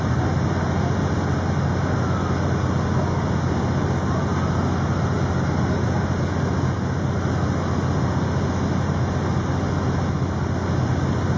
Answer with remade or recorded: recorded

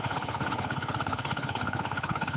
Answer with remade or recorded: remade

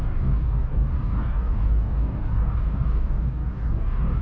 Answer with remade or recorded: remade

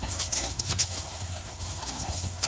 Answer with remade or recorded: remade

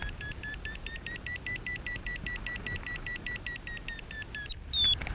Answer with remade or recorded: recorded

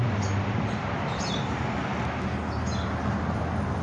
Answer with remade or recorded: recorded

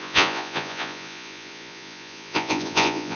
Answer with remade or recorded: remade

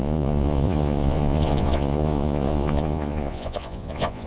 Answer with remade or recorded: remade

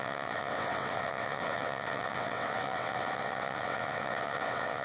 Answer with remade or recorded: remade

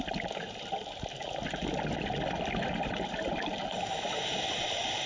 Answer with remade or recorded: recorded